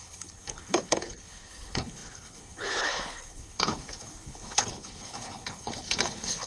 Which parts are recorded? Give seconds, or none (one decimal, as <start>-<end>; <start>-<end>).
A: none